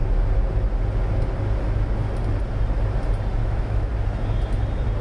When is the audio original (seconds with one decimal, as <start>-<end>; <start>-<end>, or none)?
0.0-3.4; 3.9-5.0